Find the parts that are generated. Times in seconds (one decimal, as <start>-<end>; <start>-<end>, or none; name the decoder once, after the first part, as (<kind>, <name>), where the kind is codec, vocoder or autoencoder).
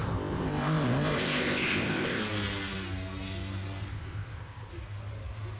0.0-2.2 (codec, ZipCodec); 3.9-4.7